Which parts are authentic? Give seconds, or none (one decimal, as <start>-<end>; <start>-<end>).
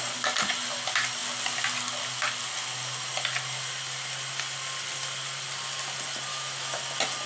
0.0-6.3; 6.8-7.3